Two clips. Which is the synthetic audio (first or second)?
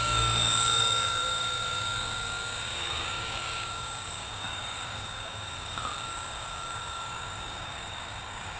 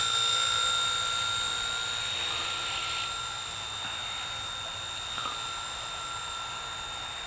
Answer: first